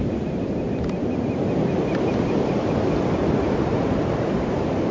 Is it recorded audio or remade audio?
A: recorded